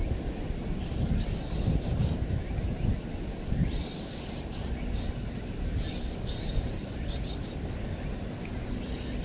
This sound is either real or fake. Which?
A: real